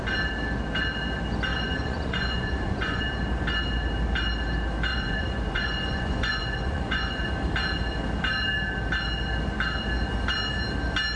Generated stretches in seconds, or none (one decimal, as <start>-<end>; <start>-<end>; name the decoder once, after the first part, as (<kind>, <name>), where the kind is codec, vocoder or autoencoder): 1.5-3.0 (vocoder, Vocos); 4.9-7.3